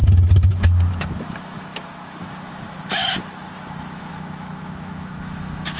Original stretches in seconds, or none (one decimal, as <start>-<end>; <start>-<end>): 0.0-0.9